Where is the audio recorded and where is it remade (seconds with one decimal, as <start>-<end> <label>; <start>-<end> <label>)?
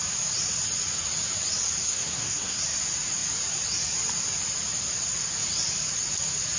0.0-1.8 recorded; 1.8-2.6 remade; 2.6-6.6 recorded